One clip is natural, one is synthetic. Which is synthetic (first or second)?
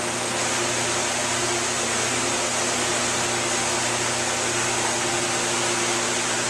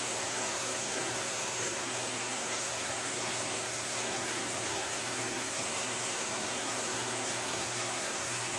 second